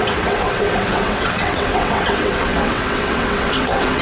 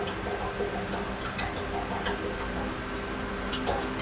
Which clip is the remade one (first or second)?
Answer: first